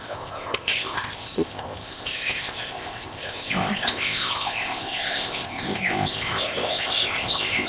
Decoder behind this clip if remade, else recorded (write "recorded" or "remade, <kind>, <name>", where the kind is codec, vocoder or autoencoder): remade, codec, ZipCodec